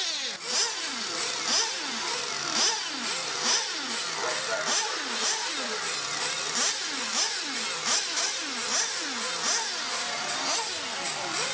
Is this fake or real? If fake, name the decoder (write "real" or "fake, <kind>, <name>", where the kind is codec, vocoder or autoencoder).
real